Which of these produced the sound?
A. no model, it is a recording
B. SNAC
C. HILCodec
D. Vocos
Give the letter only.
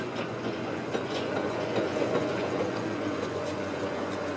D